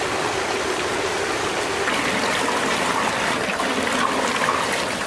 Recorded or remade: recorded